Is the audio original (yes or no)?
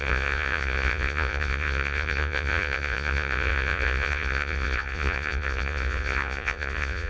no